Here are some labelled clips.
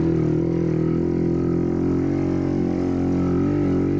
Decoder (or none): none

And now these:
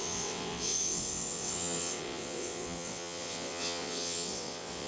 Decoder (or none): vocoder, WaveNeXt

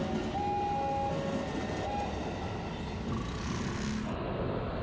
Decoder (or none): none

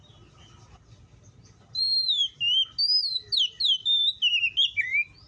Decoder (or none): none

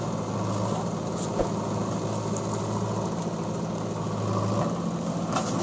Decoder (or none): none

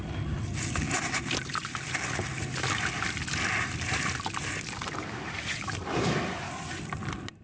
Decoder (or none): none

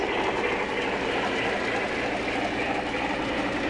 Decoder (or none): none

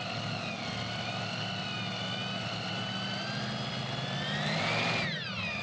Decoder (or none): none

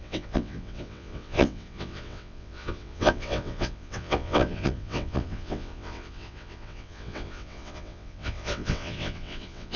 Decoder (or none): vocoder, WaveNeXt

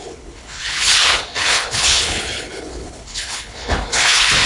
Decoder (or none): codec, HILCodec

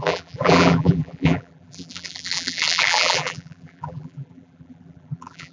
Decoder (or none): vocoder, BigVGAN v2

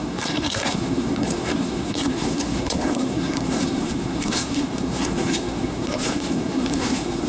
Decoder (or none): codec, SNAC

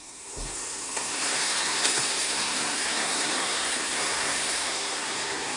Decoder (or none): codec, SNAC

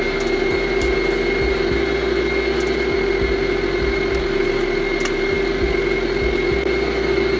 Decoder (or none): none